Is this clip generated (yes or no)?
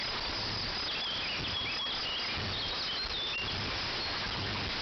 no